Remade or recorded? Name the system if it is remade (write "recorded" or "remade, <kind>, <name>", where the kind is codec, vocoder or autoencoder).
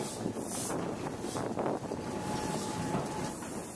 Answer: remade, vocoder, BigVGAN v2